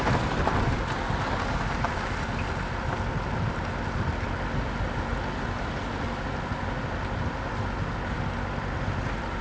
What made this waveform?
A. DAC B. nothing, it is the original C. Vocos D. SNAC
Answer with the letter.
B